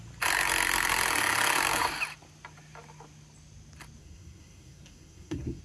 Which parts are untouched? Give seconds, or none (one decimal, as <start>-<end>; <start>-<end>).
0.0-4.0